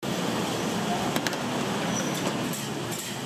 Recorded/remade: recorded